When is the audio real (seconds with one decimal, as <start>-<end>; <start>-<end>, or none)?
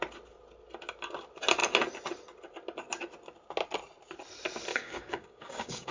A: 0.0-4.7